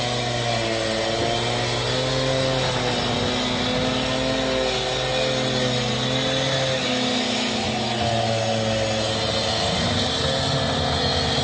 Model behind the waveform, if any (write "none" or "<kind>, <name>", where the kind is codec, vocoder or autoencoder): none